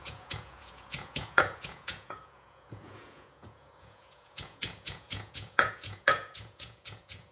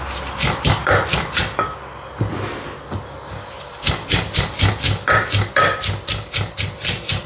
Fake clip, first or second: first